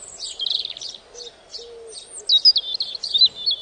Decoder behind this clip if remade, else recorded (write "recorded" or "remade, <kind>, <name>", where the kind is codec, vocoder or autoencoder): recorded